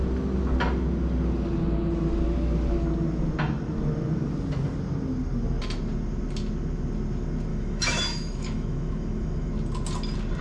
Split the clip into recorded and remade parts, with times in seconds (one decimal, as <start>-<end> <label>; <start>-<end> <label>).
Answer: 0.0-7.5 recorded; 7.5-9.5 remade; 9.5-10.4 recorded